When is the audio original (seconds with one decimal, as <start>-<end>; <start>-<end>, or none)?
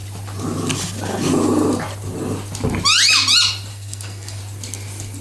0.0-3.7; 4.4-5.2